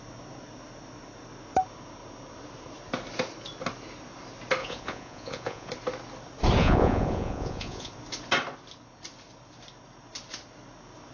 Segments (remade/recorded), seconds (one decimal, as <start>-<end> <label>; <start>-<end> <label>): 0.0-4.6 recorded; 4.6-5.7 remade; 5.7-6.6 recorded; 6.6-7.9 remade; 7.9-11.1 recorded